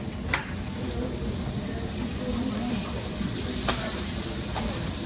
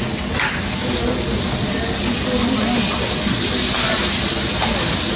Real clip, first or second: second